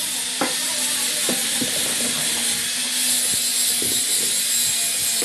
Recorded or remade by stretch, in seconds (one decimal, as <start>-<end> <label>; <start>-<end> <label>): 0.0-5.2 recorded